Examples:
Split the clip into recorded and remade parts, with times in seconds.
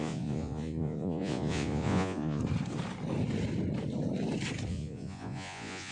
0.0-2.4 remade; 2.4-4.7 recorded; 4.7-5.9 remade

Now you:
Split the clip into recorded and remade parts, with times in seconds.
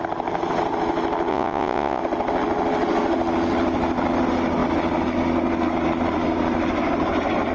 0.0-1.3 recorded; 1.3-2.0 remade; 2.0-7.5 recorded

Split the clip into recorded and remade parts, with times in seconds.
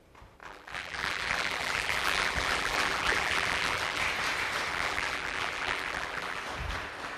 0.0-0.4 recorded; 0.4-4.0 remade; 4.0-4.7 recorded; 4.7-6.4 remade; 6.4-7.2 recorded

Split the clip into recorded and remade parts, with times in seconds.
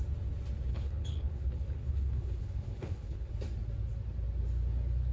0.0-0.7 recorded; 0.7-3.3 remade; 3.3-5.1 recorded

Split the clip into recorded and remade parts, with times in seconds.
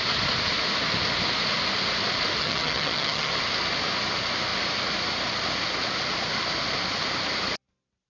0.0-2.4 recorded; 2.4-3.3 remade; 3.3-8.1 recorded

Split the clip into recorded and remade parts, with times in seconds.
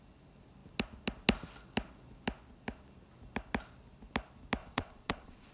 0.0-4.6 recorded; 4.6-5.5 remade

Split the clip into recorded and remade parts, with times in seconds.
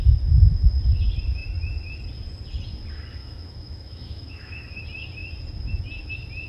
0.0-3.2 recorded; 3.2-4.8 remade; 4.8-6.5 recorded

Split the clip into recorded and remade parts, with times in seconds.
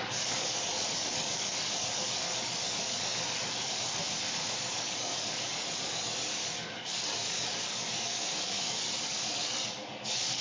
0.0-4.0 remade; 4.0-4.6 recorded; 4.6-10.4 remade